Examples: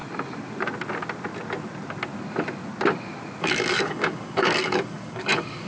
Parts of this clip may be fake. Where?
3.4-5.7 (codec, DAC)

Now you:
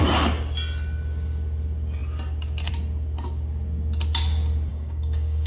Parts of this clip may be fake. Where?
4.7-5.5 (codec, DAC)

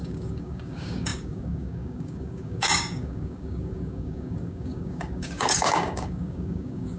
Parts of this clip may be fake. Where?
0.0-7.0 (codec, DAC)

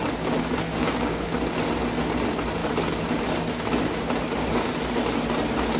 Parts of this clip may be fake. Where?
0.7-1.3 (codec, DAC)

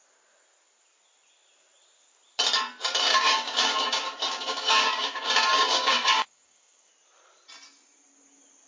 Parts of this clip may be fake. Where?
3.1-6.9 (codec, DAC)